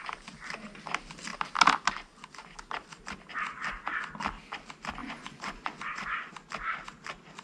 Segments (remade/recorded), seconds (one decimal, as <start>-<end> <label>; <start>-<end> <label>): 0.0-5.0 recorded; 5.0-6.3 remade; 6.3-7.4 recorded